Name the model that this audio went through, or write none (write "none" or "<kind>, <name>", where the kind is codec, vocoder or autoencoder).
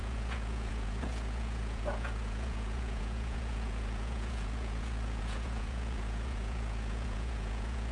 vocoder, Vocos